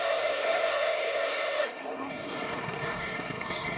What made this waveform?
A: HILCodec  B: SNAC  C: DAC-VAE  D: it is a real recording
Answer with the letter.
B